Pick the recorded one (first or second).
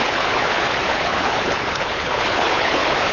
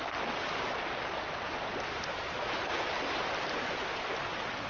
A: second